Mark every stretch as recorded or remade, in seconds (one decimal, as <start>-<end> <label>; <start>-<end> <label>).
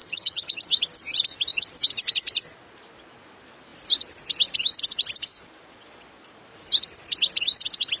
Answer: 0.0-0.6 remade; 0.6-8.0 recorded